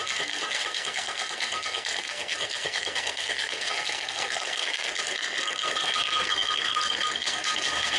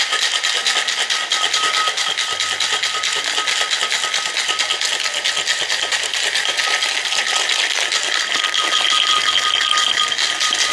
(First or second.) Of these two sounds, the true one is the second